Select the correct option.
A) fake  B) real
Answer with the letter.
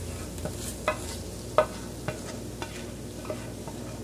B